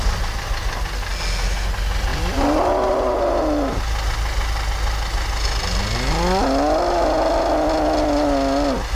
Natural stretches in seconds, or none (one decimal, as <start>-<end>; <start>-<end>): 0.0-2.1; 2.7-8.9